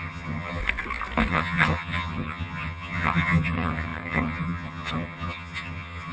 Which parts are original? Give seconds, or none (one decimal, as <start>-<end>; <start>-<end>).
0.6-1.3